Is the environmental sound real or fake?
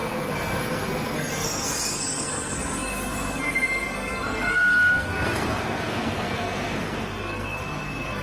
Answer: fake